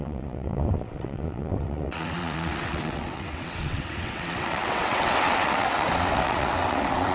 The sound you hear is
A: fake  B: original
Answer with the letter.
A